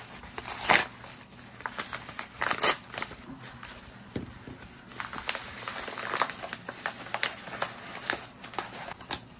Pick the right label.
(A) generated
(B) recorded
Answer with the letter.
B